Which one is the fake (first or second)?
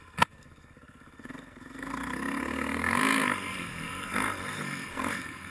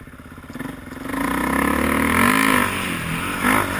first